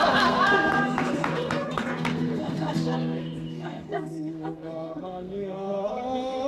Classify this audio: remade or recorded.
remade